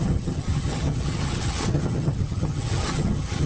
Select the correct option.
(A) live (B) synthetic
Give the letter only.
B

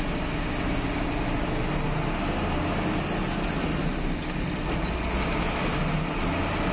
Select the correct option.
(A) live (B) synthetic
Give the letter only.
A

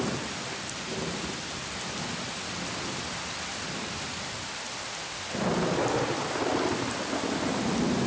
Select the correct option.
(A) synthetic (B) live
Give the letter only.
B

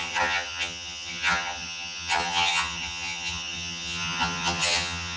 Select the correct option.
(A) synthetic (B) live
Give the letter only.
A